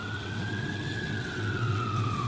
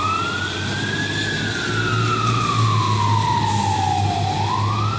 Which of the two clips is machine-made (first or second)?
first